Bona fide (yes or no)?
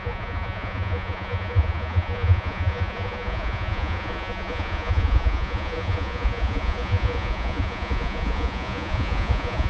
no